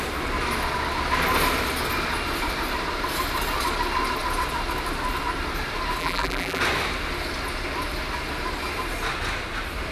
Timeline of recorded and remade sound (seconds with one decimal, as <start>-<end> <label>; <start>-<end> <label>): 0.0-6.0 recorded; 6.0-6.6 remade; 6.6-9.9 recorded